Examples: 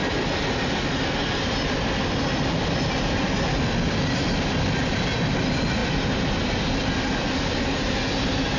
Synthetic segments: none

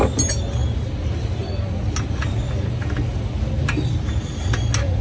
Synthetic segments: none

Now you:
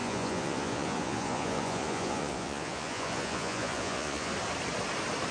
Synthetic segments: 0.0-4.3 (vocoder, Vocos)